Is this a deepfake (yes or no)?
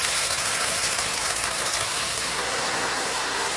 yes